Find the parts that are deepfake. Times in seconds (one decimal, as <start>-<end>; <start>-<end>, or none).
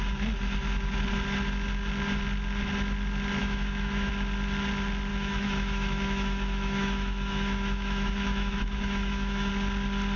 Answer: 3.4-4.1; 5.1-9.5